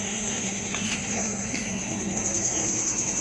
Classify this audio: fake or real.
fake